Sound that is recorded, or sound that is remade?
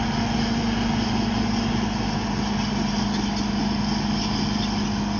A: recorded